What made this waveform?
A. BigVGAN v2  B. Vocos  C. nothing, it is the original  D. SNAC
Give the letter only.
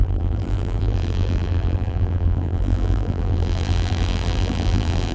A